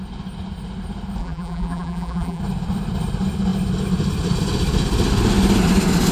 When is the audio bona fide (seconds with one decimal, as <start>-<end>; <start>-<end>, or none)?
0.0-1.2; 2.4-6.1